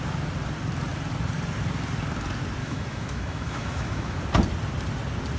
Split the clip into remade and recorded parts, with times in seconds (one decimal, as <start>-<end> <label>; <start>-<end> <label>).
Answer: 0.0-2.6 recorded; 2.6-4.2 remade; 4.2-5.4 recorded